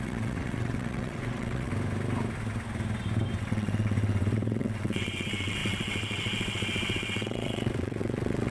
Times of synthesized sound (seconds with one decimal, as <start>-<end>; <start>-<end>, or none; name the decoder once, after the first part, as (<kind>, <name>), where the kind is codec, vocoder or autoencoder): 0.0-1.7 (vocoder, WaveNeXt); 3.4-8.5